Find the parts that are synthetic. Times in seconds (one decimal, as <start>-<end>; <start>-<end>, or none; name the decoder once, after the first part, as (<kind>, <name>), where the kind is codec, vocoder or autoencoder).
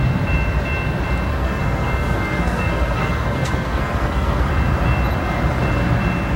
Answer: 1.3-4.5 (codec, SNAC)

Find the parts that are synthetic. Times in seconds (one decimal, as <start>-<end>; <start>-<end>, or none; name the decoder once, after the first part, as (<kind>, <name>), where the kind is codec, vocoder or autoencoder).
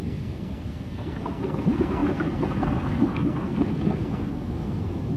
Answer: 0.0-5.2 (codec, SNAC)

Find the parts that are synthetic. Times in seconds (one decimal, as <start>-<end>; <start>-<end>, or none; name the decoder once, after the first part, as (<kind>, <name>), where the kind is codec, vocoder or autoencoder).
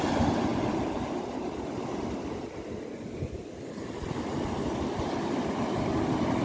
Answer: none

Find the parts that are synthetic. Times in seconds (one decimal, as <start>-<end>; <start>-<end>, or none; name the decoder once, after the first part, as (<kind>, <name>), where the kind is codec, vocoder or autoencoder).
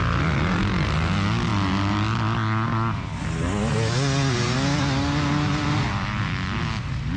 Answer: none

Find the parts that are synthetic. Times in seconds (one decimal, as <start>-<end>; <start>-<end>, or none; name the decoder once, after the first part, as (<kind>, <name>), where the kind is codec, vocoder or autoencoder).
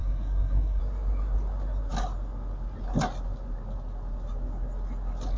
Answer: 0.0-0.8 (codec, SNAC)